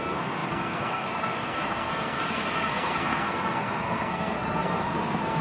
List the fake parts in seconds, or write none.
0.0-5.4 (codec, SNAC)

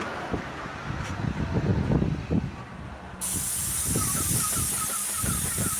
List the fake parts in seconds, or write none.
none

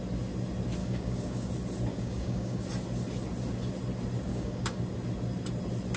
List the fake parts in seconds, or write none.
0.8-1.5 (codec, DAC); 1.9-2.6; 4.3-4.8

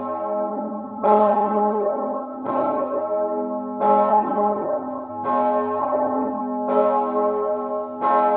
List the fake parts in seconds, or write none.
0.5-3.0 (vocoder, HiFi-GAN); 4.1-5.1; 5.8-6.4

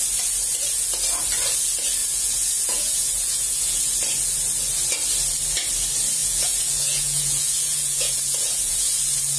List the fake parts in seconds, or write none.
2.0-3.9 (vocoder, Vocos); 6.2-9.0

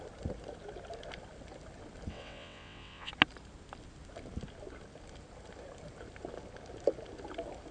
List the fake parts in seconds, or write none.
2.1-3.1 (vocoder, WaveNeXt)

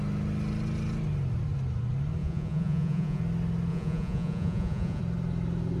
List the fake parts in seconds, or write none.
2.2-3.2 (vocoder, Vocos); 3.7-5.0

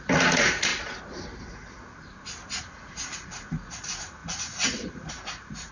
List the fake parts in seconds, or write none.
0.0-0.7 (vocoder, Vocos); 2.6-5.7